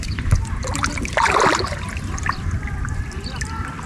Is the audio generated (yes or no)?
no